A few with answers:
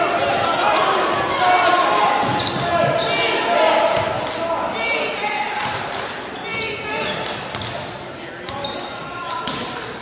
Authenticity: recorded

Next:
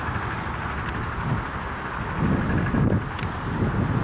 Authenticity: recorded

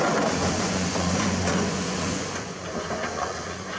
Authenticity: remade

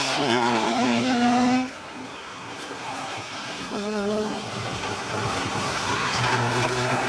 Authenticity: remade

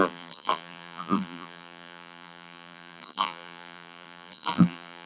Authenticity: remade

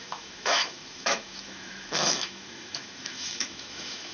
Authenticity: remade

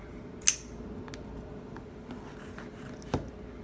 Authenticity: recorded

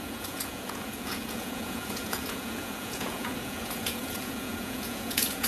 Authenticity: remade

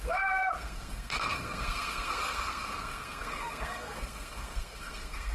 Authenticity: remade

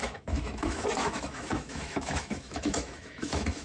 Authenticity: remade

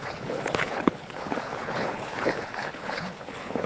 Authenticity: remade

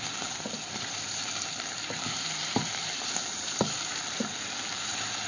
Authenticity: remade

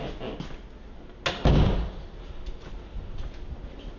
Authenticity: recorded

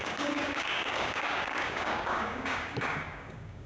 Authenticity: remade